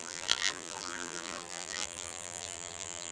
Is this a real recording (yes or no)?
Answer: no